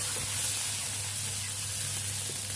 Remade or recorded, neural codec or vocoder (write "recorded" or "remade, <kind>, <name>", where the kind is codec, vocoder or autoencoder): recorded